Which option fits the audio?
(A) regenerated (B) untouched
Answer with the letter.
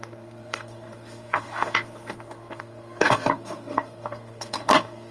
A